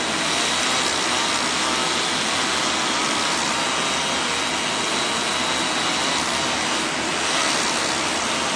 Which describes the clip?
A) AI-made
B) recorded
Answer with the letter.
B